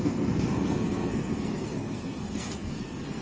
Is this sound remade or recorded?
remade